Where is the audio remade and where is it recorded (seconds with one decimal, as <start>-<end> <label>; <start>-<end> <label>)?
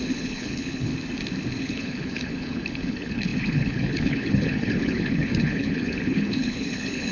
0.0-0.9 remade; 0.9-1.6 recorded; 1.6-7.1 remade